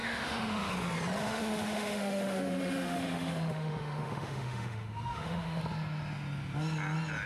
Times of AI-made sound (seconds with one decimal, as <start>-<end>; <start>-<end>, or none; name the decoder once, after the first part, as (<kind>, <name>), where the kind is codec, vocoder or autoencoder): 0.0-0.7 (autoencoder, DAC-VAE); 1.2-5.6